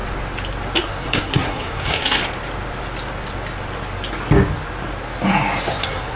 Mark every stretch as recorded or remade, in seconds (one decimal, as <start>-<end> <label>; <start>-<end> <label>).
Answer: 0.0-0.8 recorded; 0.8-2.2 remade; 2.2-5.7 recorded; 5.7-6.2 remade